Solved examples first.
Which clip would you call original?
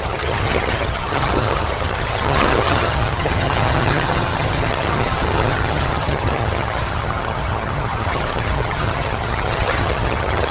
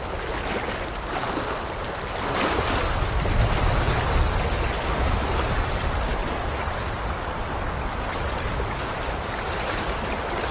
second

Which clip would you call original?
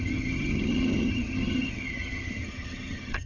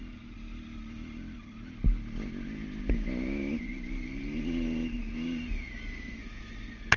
second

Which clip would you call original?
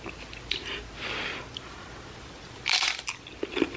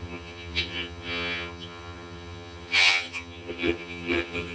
first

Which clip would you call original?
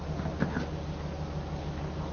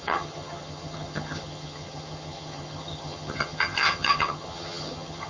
first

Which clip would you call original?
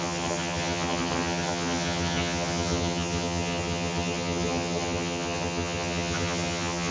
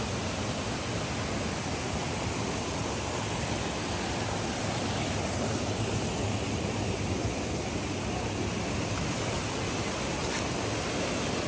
second